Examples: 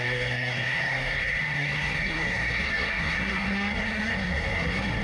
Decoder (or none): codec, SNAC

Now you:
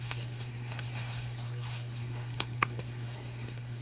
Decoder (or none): codec, SNAC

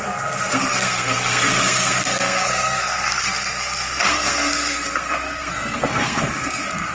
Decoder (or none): codec, SNAC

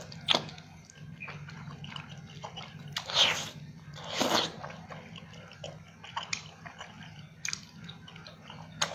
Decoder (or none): none